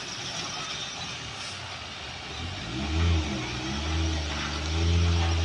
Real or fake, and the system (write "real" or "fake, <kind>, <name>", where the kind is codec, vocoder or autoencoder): real